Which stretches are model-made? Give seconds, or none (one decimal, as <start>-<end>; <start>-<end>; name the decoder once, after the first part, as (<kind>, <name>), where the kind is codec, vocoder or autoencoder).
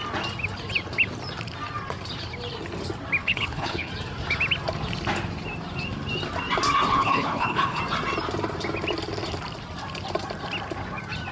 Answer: 3.2-3.9 (codec, HILCodec); 6.9-7.8